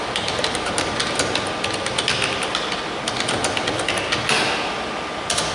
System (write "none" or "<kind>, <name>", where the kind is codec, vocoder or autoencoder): none